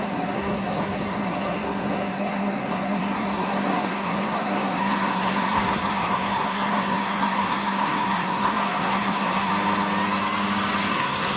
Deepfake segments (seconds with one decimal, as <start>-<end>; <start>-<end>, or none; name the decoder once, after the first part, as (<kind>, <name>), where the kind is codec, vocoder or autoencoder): 0.0-9.5 (codec, SNAC); 10.9-11.4